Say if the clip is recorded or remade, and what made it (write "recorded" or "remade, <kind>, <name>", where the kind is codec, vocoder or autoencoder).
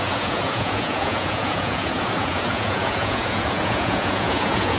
remade, vocoder, Vocos